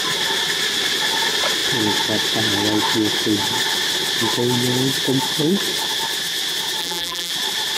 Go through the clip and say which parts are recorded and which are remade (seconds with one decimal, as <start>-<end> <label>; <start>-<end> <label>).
0.0-6.8 recorded; 6.8-7.3 remade; 7.3-7.8 recorded